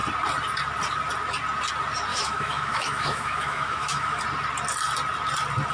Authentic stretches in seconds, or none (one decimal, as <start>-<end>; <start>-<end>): 0.0-2.1; 4.2-5.7